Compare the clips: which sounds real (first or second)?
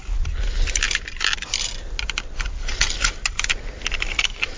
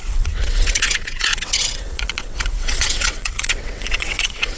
first